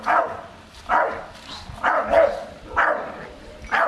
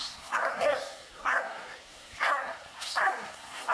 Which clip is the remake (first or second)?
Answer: second